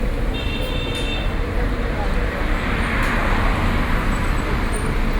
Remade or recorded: recorded